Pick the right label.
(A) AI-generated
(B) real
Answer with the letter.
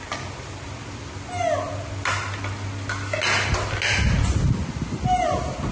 B